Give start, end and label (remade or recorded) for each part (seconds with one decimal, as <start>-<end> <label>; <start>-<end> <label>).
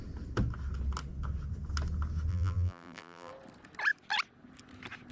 0.0-2.3 recorded; 2.3-3.3 remade; 3.3-5.1 recorded